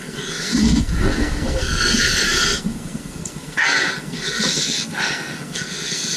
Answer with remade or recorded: remade